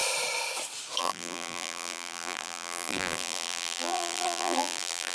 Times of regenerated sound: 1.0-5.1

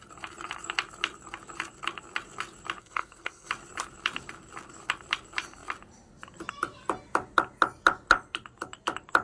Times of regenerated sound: 2.8-3.5